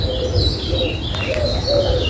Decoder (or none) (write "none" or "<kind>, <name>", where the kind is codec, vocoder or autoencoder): none